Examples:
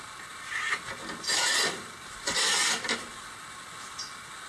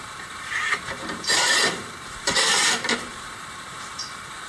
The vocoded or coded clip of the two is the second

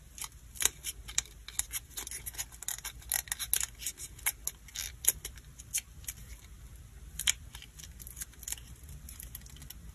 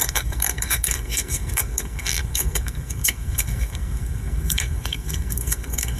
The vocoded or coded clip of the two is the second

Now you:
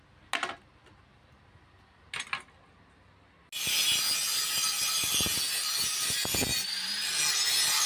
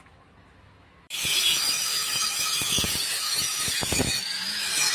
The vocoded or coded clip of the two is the second